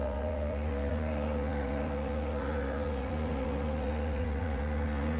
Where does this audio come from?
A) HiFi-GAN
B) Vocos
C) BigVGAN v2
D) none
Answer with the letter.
B